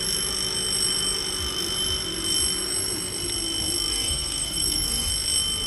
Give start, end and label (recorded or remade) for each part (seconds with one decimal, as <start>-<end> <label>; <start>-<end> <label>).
0.0-3.9 recorded; 3.9-5.1 remade; 5.1-5.7 recorded